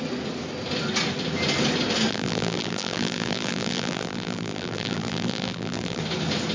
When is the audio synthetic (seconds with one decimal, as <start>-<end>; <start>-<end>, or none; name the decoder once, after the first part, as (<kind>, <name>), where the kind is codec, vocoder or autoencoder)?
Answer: 2.1-6.0 (vocoder, BigVGAN v2)